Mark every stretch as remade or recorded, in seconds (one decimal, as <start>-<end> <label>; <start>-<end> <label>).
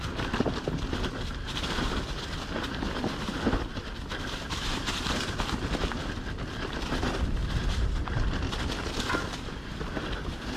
0.0-10.6 recorded